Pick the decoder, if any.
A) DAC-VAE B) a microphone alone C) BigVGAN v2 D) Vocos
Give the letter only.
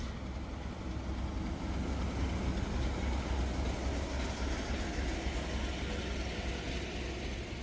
B